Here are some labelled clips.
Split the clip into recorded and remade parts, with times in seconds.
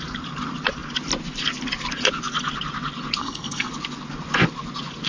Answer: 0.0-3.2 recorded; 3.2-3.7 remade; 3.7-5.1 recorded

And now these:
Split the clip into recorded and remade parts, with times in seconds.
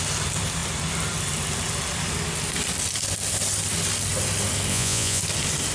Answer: 0.0-4.7 recorded; 4.7-5.2 remade; 5.2-5.7 recorded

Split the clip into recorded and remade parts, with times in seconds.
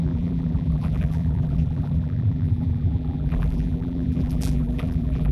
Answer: 0.0-5.3 remade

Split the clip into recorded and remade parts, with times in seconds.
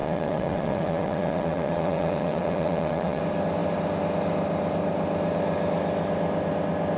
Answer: 0.0-3.2 remade; 3.2-7.0 recorded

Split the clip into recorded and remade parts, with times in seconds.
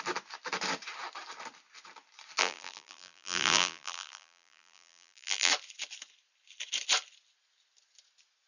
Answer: 0.0-2.4 recorded; 2.4-5.5 remade; 5.5-8.5 recorded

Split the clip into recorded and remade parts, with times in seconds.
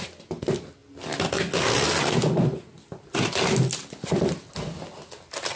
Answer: 0.0-5.6 recorded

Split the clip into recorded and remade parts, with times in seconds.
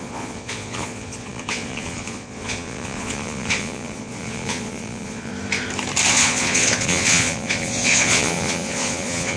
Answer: 0.0-5.3 remade; 5.3-6.1 recorded; 6.1-9.4 remade